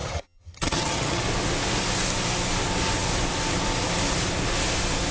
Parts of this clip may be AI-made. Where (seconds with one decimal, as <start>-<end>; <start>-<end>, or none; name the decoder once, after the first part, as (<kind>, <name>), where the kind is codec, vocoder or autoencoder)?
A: 0.0-1.2 (vocoder, HiFi-GAN)